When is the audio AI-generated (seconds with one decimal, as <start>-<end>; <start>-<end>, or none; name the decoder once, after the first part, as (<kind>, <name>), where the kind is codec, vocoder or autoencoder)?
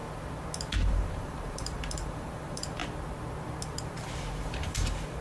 0.7-2.8 (vocoder, BigVGAN v2); 4.2-5.2